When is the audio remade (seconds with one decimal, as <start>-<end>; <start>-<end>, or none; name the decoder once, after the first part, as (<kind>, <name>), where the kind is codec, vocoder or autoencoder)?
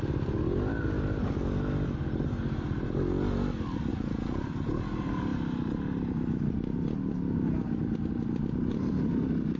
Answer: 3.9-4.5 (vocoder, Vocos)